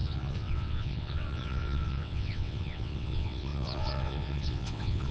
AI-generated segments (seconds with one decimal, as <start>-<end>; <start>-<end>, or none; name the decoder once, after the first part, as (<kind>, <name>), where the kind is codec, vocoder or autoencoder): 0.0-5.1 (vocoder, WaveNeXt)